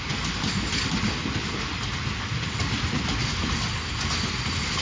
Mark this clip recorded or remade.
recorded